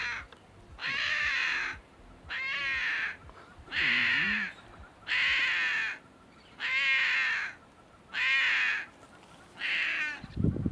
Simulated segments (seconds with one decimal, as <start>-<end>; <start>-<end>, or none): 0.8-2.3; 3.5-5.1